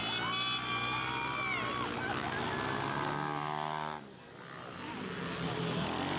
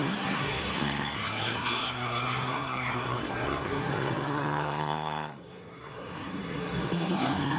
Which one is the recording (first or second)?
first